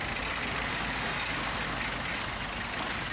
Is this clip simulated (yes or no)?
no